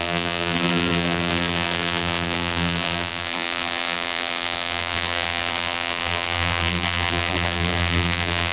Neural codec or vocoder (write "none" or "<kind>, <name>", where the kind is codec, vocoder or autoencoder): vocoder, BigVGAN v2